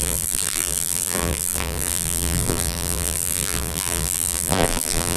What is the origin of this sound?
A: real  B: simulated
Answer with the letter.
B